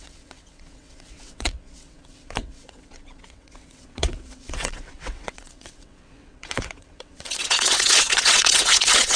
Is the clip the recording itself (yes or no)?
no